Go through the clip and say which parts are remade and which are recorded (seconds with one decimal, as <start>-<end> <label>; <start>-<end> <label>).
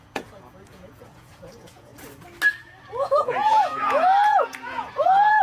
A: 0.0-1.9 remade; 1.9-3.0 recorded; 3.0-5.4 remade